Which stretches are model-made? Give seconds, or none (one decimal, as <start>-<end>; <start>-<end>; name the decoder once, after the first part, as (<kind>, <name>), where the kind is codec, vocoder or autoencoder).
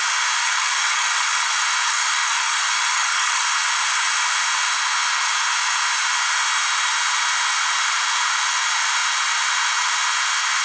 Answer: 0.4-1.5 (codec, DAC); 1.9-3.4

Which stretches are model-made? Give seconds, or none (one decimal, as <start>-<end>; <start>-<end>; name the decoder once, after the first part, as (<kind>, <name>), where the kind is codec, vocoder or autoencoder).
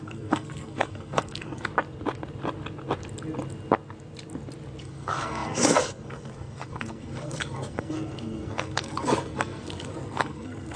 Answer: 0.0-1.7 (codec, SNAC); 4.8-10.8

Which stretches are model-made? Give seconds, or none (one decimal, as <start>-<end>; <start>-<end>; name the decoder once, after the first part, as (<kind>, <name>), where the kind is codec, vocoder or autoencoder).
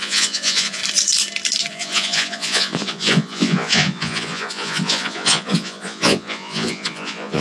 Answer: 0.0-0.8 (vocoder, Vocos); 1.7-7.4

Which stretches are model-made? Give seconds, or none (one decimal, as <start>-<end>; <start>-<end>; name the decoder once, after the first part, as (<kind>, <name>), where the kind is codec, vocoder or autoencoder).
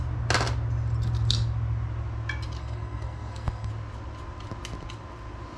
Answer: 2.6-3.7 (codec, SNAC)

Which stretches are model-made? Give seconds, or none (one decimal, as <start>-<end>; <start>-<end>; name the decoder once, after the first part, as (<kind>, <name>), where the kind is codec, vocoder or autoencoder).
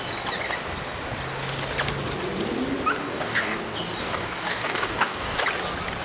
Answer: 3.0-3.6 (codec, DAC); 4.0-5.4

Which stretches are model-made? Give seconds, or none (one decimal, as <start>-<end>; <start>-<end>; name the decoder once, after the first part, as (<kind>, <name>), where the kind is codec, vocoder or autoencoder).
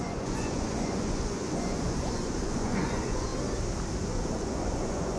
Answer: 0.0-3.3 (vocoder, Vocos); 4.0-5.2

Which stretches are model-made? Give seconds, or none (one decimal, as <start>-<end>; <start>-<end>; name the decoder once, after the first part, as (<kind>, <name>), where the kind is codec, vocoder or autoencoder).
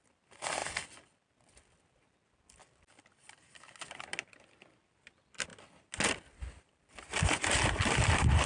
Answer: none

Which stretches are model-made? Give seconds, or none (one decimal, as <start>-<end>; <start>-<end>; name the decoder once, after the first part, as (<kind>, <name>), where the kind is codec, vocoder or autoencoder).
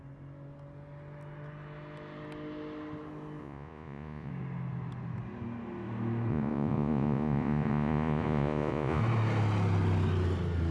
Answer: 3.4-4.3 (vocoder, Vocos); 6.3-9.0